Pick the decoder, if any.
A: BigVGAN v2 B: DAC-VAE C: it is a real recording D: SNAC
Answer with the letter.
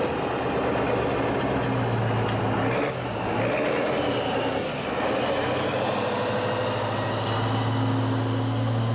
C